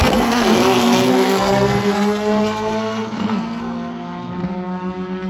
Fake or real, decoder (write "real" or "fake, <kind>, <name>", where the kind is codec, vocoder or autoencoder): fake, codec, SNAC